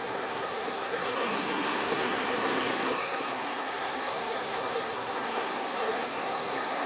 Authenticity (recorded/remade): remade